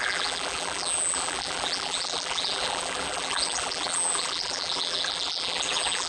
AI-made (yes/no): yes